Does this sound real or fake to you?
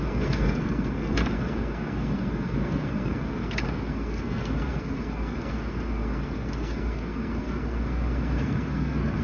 fake